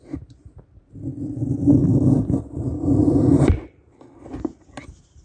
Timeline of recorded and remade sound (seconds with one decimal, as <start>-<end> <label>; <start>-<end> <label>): 0.0-1.1 remade; 1.1-2.4 recorded; 2.4-3.9 remade; 3.9-4.8 recorded; 4.8-5.2 remade